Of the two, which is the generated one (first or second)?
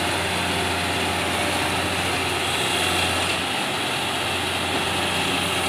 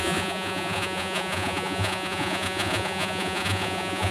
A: second